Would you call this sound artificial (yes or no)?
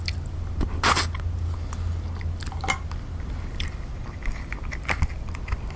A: no